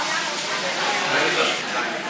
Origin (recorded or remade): recorded